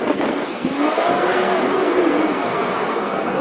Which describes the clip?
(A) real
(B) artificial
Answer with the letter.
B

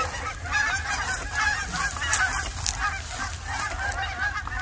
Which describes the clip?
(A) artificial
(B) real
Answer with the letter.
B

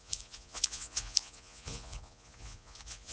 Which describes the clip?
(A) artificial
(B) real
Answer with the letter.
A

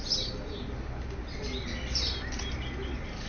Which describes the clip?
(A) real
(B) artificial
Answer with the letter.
A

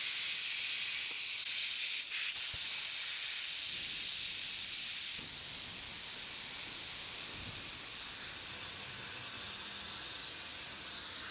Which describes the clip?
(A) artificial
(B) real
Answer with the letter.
B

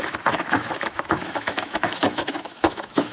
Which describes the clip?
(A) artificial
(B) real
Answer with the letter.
A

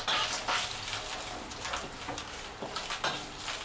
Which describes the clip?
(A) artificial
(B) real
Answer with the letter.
B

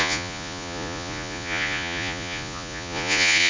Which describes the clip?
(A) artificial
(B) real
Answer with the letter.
A